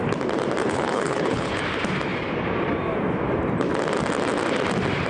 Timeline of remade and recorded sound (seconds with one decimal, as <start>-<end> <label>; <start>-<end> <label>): 0.0-0.6 recorded; 0.6-1.6 remade; 1.6-5.1 recorded